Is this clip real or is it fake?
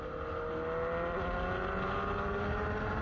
real